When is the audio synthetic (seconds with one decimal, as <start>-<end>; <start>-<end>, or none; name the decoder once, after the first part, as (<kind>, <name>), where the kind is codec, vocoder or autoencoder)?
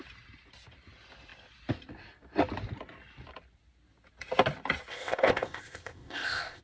4.9-6.6 (codec, ZipCodec)